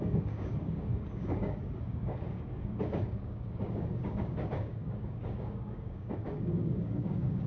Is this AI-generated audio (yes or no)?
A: yes